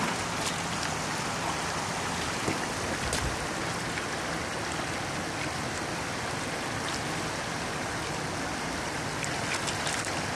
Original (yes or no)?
yes